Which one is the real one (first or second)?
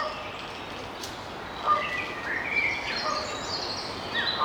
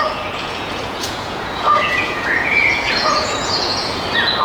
first